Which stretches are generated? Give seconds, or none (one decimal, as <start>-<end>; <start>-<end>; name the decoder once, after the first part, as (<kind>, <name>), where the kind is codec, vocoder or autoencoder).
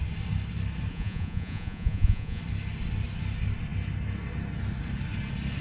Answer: 0.9-2.4 (vocoder, Vocos)